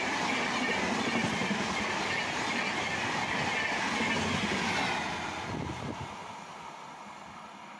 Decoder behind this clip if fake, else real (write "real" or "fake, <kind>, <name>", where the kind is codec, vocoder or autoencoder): real